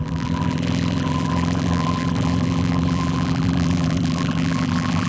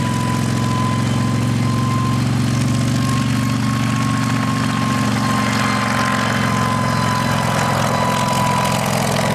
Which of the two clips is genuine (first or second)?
second